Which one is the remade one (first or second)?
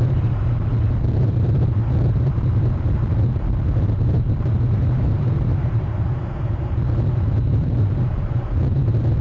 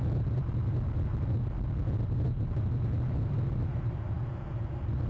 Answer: first